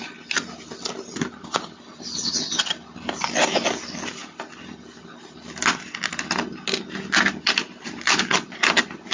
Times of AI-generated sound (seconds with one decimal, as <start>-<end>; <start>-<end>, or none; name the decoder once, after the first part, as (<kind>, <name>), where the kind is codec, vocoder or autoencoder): 0.0-4.2 (vocoder, BigVGAN v2); 7.4-9.1